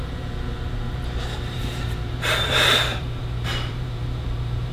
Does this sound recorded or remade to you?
remade